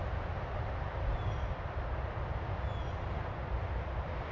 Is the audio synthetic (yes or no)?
no